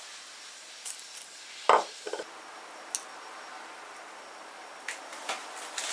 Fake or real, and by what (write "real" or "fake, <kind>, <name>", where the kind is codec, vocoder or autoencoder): real